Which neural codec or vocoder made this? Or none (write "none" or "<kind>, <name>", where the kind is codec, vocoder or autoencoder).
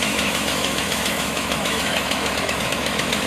autoencoder, DAC-VAE